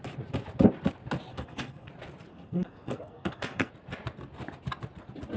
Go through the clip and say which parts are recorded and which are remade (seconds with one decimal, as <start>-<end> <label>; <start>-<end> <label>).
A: 0.0-1.3 recorded; 1.3-1.9 remade; 1.9-2.3 recorded; 2.3-3.7 remade; 3.7-5.4 recorded